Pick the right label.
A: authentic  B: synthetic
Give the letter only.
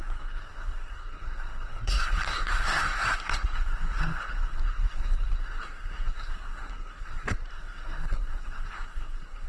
B